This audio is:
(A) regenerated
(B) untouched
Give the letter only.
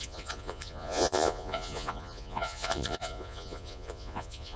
A